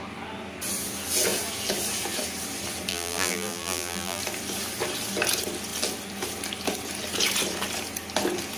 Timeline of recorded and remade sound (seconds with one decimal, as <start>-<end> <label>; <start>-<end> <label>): 0.0-2.9 recorded; 2.9-4.2 remade; 4.2-8.6 recorded